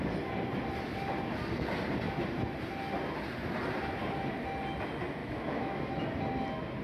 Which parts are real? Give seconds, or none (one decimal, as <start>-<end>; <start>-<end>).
0.0-5.2; 5.9-6.8

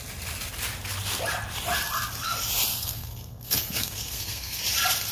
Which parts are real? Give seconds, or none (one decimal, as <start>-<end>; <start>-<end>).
0.0-2.7; 4.6-5.1